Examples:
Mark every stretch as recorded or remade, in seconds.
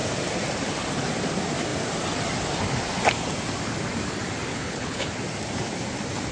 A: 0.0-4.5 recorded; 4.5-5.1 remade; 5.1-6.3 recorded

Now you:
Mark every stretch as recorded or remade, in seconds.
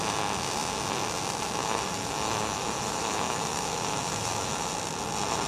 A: 0.0-1.6 recorded; 1.6-4.7 remade; 4.7-5.5 recorded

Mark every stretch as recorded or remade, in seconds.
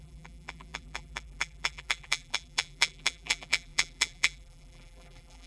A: 0.0-5.5 remade